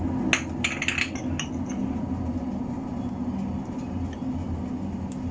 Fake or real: real